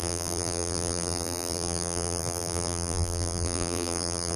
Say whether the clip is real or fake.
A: fake